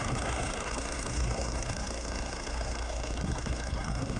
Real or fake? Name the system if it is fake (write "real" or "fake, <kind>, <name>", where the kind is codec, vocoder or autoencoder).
fake, codec, SNAC